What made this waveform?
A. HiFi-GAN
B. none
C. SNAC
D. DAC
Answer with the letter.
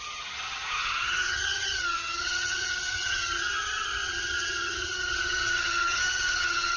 A